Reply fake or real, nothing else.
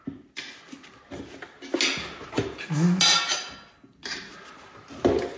real